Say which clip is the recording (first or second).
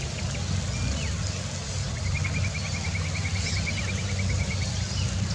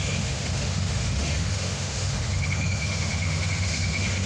first